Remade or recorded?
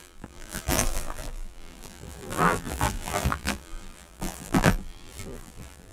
remade